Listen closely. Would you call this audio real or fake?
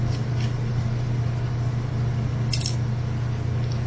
real